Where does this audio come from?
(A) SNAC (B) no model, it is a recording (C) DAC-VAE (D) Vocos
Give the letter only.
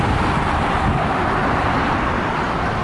B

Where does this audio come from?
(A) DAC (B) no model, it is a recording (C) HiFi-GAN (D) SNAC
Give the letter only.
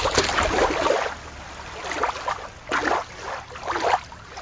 B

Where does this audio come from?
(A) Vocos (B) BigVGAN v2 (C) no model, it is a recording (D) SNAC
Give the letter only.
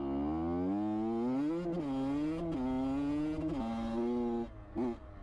C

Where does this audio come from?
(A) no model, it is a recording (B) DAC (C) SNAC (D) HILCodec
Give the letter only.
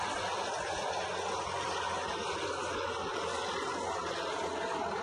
A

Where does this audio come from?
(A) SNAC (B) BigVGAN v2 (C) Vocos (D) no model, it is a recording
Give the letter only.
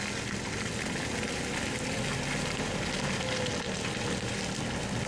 D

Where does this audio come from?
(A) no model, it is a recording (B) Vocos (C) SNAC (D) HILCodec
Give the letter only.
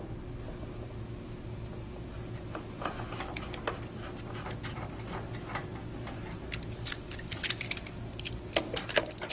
A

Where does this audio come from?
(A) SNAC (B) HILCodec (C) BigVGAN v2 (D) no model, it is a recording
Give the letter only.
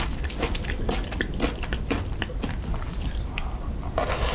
D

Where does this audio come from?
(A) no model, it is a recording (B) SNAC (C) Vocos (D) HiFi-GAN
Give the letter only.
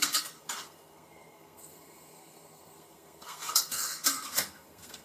B